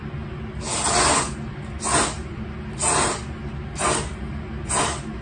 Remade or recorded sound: recorded